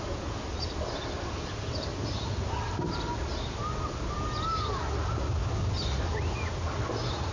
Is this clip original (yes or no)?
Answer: yes